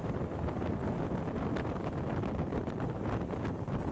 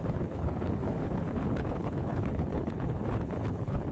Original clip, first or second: first